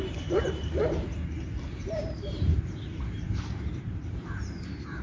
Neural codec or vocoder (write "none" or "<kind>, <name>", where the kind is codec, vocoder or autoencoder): vocoder, BigVGAN v2